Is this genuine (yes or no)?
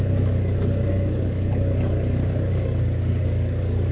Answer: no